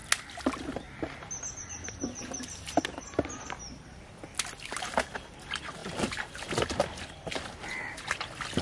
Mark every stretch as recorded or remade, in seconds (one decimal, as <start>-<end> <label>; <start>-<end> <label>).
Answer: 0.0-8.6 recorded